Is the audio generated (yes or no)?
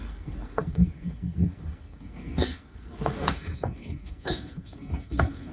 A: yes